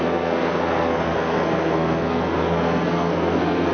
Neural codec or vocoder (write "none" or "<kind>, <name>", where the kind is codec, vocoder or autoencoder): codec, SNAC